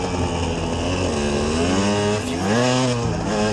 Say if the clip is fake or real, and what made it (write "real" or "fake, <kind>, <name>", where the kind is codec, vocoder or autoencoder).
real